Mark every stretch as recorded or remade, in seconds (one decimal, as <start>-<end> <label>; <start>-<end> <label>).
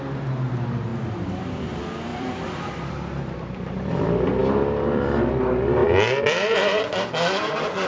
0.0-0.9 recorded; 0.9-1.7 remade; 1.7-2.1 recorded; 2.1-2.9 remade; 2.9-4.4 recorded; 4.4-5.3 remade; 5.3-5.8 recorded; 5.8-6.8 remade; 6.8-7.9 recorded